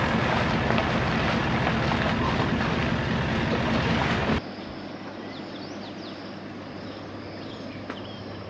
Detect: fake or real real